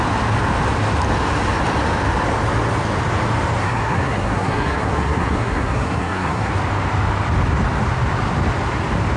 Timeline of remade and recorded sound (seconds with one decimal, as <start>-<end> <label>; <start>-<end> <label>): 0.0-3.6 recorded; 3.6-6.5 remade; 6.5-9.2 recorded